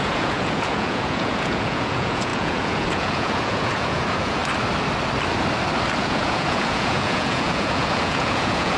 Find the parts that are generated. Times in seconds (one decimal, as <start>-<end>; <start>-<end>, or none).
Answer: 0.0-4.4; 6.0-8.8